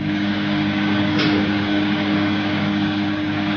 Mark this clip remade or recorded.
remade